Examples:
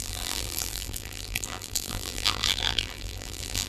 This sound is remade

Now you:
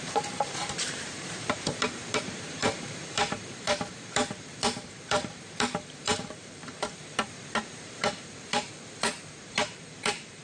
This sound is remade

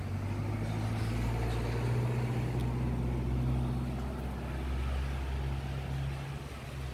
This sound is recorded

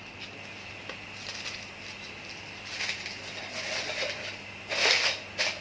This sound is recorded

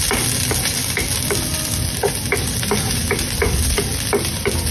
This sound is recorded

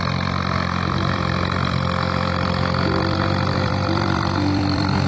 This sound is remade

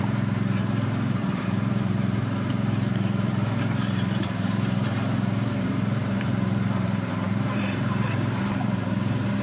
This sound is remade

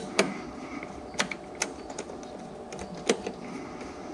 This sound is recorded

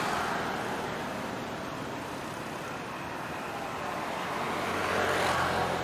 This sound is recorded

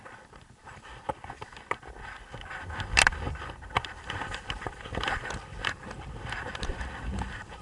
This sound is remade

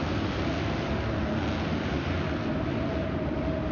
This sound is recorded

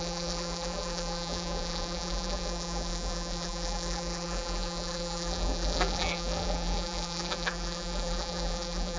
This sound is remade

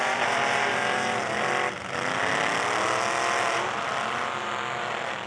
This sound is recorded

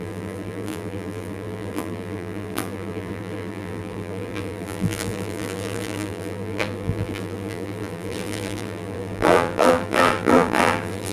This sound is remade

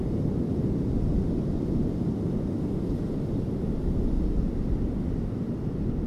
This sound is recorded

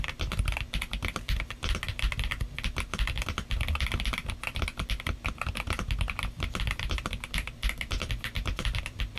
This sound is remade